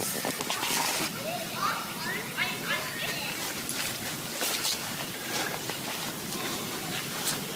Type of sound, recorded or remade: recorded